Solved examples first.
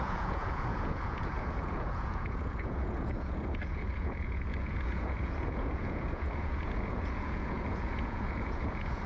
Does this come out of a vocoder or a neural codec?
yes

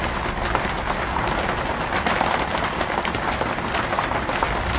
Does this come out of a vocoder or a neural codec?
no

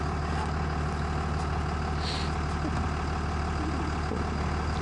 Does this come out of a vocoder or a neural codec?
no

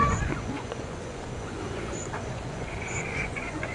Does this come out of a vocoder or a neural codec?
yes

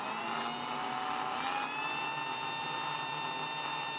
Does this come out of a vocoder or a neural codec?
no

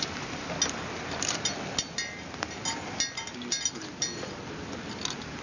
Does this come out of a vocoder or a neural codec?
no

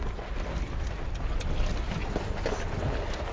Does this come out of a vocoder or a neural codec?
no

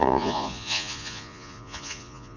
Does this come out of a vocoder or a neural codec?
yes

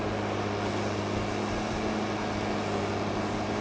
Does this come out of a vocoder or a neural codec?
no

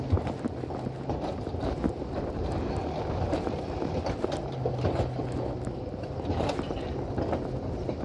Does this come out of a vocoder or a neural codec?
no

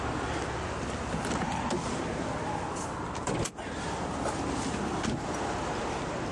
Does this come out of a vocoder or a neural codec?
no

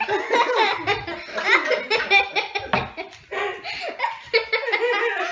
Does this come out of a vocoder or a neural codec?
no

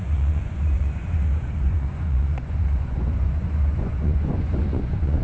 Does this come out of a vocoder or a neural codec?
yes